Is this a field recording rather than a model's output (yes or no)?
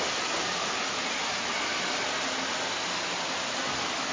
yes